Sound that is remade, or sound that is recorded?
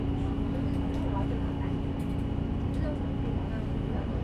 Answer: recorded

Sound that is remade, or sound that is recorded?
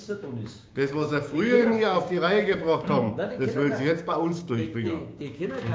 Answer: remade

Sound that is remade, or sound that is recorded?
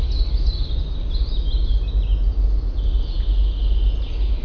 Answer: recorded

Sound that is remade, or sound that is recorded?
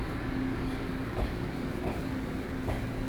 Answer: remade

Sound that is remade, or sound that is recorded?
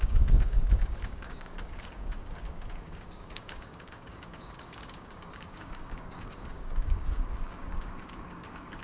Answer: remade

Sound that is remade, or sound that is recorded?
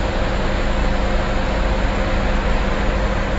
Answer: recorded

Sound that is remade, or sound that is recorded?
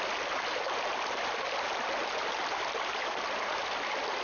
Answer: recorded